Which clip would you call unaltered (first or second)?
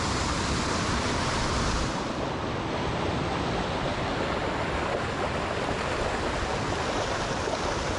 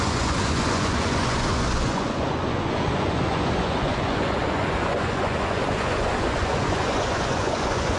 first